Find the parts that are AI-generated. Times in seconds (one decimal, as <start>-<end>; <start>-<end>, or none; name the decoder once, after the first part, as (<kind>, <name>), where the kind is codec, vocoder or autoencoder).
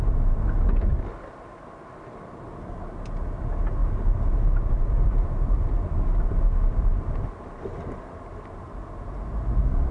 none